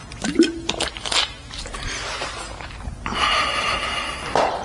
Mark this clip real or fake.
real